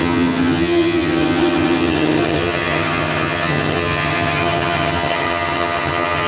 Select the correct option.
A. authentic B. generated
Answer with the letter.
B